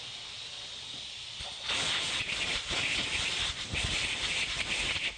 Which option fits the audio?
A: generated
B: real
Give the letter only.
A